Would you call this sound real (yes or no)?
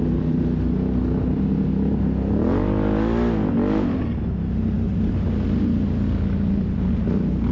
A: yes